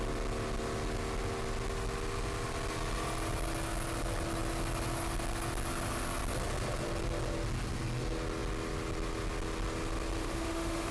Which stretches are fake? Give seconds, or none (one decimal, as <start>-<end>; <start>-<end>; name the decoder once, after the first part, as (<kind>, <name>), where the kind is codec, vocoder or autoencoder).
10.2-10.9 (autoencoder, DAC-VAE)